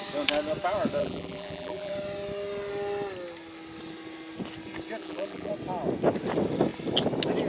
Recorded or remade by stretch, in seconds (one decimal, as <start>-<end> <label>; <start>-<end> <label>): 0.0-1.0 recorded; 1.0-1.9 remade; 1.9-5.0 recorded; 5.0-5.5 remade; 5.5-7.5 recorded